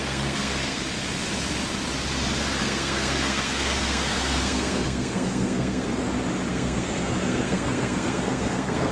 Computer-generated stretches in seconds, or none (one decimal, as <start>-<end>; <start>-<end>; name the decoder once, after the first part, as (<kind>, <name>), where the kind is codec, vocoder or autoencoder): 0.0-0.8 (codec, SNAC); 2.6-5.9; 6.5-8.9